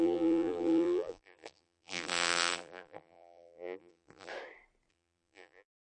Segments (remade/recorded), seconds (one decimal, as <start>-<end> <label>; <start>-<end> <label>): 0.0-4.3 remade; 4.3-4.9 recorded; 4.9-5.9 remade

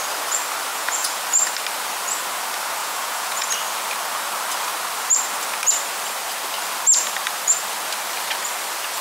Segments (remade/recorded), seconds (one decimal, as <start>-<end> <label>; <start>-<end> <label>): 0.0-0.7 recorded; 0.7-1.2 remade; 1.2-2.8 recorded; 2.8-3.5 remade; 3.5-9.0 recorded